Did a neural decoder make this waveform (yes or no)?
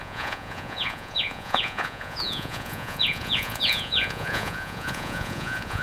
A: yes